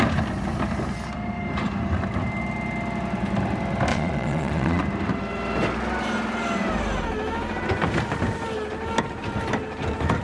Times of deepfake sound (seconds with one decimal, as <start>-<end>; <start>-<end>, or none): 3.9-4.8